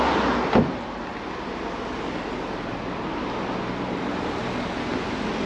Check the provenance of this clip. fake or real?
real